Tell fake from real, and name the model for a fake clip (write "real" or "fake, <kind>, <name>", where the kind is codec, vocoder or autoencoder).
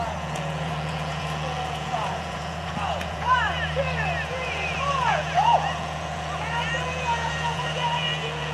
fake, vocoder, Vocos